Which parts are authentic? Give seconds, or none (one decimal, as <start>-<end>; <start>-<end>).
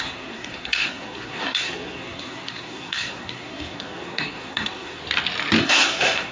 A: 5.0-5.6